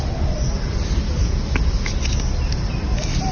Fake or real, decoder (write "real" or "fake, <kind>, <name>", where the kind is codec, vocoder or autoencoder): real